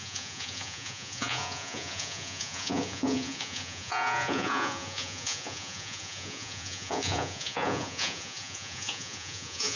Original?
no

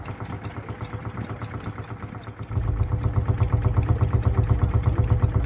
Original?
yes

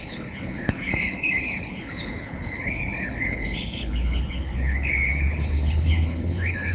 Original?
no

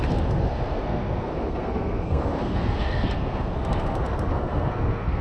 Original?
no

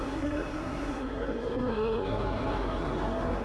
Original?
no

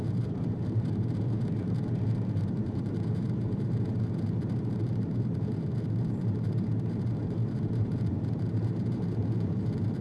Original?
no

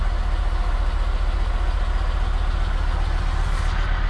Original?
yes